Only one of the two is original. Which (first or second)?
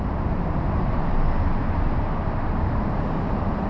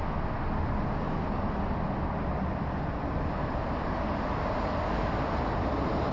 second